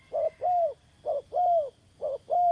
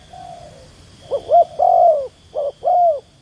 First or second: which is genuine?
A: second